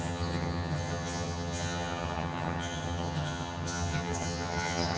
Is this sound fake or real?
fake